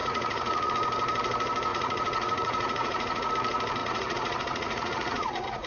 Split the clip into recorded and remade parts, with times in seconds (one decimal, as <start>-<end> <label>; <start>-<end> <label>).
0.0-0.7 remade; 0.7-1.7 recorded; 1.7-3.3 remade; 3.3-3.8 recorded; 3.8-5.7 remade